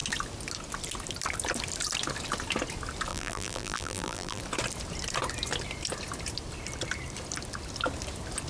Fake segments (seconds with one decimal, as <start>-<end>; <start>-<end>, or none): 3.1-4.4